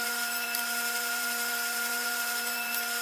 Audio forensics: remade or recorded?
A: remade